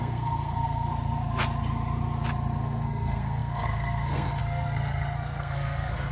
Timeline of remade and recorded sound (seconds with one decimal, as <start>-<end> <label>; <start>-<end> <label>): 0.0-0.9 remade; 0.9-2.6 recorded; 2.6-6.1 remade

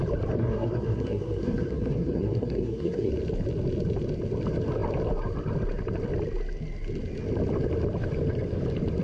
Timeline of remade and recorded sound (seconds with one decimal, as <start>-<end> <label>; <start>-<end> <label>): 0.0-0.4 recorded; 0.4-3.1 remade; 3.1-9.0 recorded

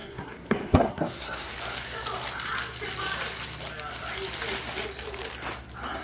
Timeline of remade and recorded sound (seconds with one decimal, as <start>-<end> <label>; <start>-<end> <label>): 0.0-1.5 remade; 1.5-6.0 recorded

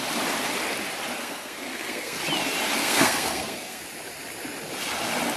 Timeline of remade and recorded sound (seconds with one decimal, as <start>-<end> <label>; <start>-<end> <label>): 0.0-1.2 recorded; 1.2-2.2 remade; 2.2-2.8 recorded; 2.8-3.8 remade; 3.8-5.4 recorded

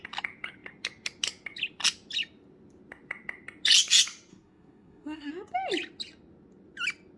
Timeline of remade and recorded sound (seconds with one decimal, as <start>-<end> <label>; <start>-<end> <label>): 0.0-4.3 recorded; 4.3-5.3 remade; 5.3-7.2 recorded

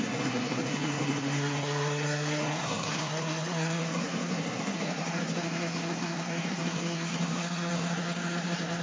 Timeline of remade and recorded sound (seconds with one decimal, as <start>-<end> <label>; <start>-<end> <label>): 0.0-8.8 remade